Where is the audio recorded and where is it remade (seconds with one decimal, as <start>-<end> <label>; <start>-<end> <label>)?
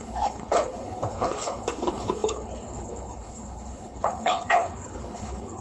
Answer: 0.0-5.6 remade